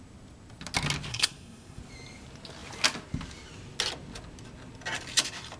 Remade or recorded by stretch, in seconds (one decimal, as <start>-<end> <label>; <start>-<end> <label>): 0.0-1.1 recorded; 1.1-1.8 remade; 1.8-5.6 recorded